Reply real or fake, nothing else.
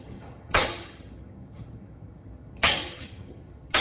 fake